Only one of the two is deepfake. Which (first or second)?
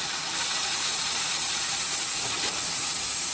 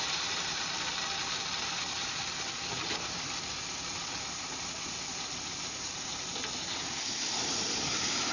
first